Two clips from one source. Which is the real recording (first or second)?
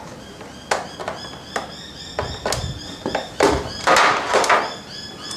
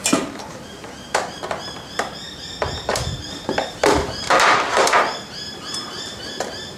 first